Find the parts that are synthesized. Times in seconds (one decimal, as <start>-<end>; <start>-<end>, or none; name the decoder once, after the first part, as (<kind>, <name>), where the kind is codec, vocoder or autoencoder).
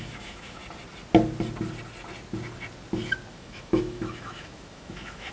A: 0.0-0.6 (autoencoder, DAC-VAE); 3.3-5.3